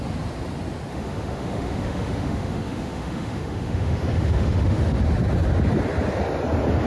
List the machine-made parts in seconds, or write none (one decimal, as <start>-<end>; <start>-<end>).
0.9-5.0